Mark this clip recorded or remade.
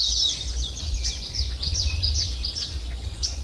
remade